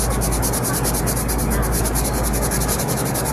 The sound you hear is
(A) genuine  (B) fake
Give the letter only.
A